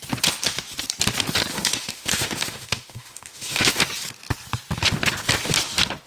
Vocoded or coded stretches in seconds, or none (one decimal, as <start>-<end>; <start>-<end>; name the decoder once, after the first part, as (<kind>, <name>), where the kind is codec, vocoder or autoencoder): 1.5-3.7 (autoencoder, DAC-VAE)